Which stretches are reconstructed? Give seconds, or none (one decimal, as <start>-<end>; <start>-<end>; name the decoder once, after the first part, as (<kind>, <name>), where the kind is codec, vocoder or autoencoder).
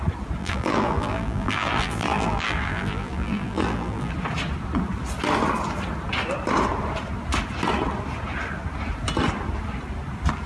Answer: 0.4-4.1 (vocoder, BigVGAN v2)